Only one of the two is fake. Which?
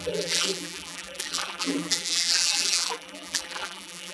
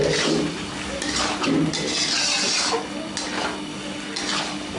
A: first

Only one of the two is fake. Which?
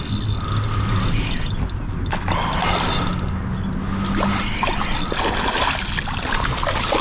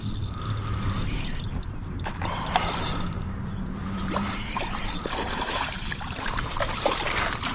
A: second